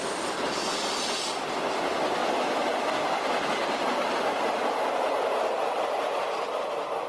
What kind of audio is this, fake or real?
real